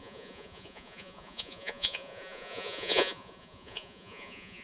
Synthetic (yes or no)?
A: yes